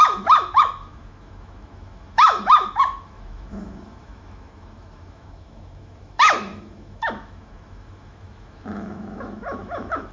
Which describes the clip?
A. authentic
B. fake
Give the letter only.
B